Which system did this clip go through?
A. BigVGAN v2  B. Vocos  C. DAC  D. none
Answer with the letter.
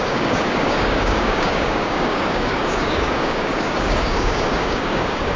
C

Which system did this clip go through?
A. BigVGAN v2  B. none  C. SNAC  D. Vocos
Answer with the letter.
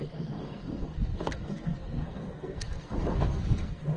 C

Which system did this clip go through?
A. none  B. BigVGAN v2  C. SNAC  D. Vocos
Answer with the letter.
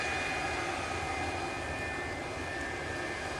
A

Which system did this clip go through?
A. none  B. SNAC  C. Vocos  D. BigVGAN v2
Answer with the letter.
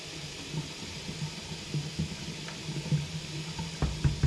A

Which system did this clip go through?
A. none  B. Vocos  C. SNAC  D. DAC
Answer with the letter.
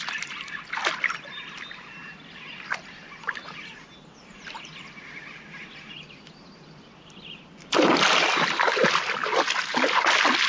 A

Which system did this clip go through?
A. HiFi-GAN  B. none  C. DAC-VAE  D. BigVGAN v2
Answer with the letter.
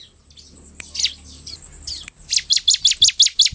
B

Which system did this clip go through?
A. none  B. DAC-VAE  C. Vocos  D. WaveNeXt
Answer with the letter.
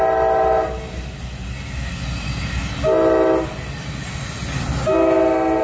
A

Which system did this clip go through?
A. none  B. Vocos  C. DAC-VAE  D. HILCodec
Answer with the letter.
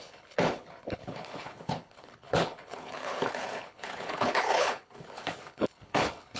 D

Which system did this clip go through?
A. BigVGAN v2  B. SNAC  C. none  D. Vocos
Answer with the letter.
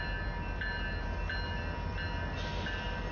C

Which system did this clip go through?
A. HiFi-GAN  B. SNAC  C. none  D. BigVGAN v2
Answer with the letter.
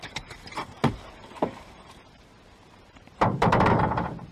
D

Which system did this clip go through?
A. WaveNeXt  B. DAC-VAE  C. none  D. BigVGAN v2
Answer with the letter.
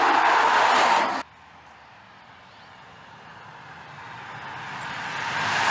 C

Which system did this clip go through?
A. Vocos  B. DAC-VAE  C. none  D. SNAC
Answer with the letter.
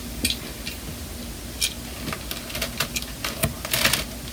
C